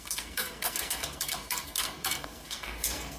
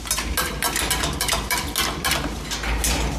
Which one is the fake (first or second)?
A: first